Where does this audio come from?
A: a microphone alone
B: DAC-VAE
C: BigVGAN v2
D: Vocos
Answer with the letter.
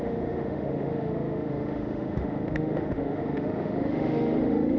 B